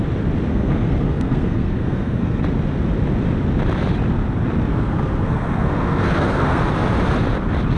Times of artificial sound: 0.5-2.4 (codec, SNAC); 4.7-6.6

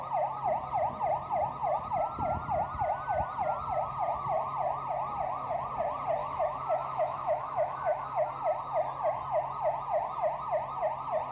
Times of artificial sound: 6.2-8.3 (autoencoder, DAC-VAE)